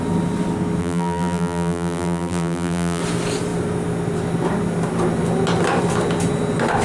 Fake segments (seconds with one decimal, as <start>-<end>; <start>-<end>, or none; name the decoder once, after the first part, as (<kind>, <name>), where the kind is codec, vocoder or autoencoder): 0.8-3.0 (vocoder, BigVGAN v2)